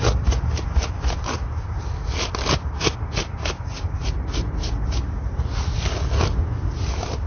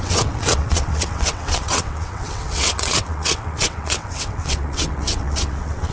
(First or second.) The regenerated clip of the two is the second